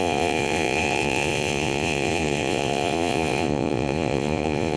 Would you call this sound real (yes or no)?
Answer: no